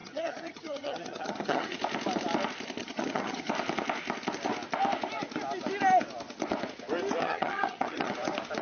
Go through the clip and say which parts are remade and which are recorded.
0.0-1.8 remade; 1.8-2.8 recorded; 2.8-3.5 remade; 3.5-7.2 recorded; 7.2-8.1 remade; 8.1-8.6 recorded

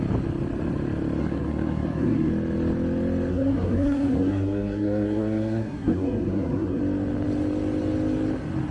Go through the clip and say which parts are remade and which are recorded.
0.0-1.2 recorded; 1.2-2.3 remade; 2.3-3.3 recorded; 3.3-6.8 remade; 6.8-8.7 recorded